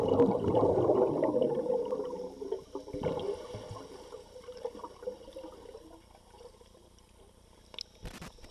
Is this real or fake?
real